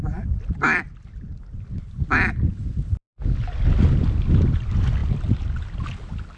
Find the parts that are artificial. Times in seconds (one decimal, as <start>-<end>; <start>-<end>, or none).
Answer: none